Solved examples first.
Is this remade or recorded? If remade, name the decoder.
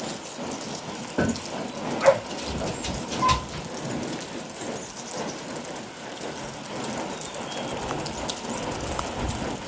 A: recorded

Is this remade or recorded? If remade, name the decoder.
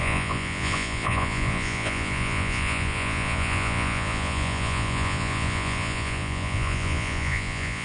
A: remade, vocoder, Vocos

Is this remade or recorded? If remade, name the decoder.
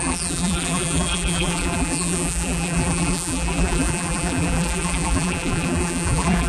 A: remade, vocoder, BigVGAN v2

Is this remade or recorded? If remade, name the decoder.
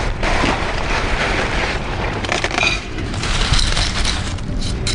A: remade, vocoder, BigVGAN v2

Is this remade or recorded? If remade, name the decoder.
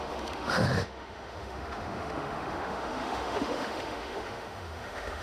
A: remade, autoencoder, DAC-VAE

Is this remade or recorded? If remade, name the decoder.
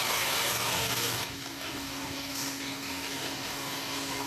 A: remade, codec, DAC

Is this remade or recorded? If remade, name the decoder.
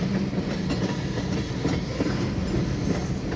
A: recorded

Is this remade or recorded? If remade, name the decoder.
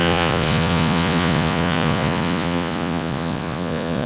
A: remade, vocoder, Vocos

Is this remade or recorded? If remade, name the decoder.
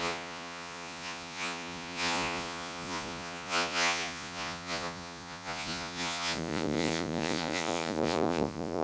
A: remade, vocoder, Vocos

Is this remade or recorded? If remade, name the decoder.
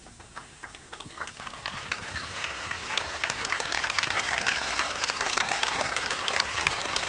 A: remade, codec, SNAC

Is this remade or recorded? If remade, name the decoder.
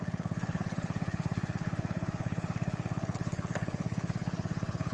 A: remade, codec, HILCodec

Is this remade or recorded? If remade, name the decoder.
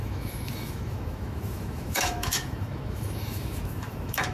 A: remade, autoencoder, DAC-VAE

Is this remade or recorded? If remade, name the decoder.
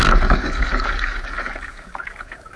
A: remade, codec, DAC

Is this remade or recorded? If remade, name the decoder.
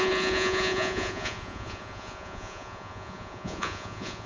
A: remade, vocoder, Vocos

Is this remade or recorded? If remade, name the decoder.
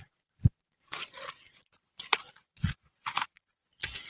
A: remade, vocoder, Vocos